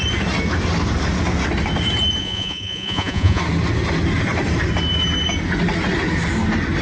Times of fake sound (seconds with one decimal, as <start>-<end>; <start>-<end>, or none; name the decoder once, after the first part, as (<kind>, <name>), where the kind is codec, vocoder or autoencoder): 2.2-3.4 (vocoder, Vocos)